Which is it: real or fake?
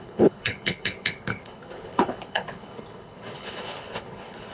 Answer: fake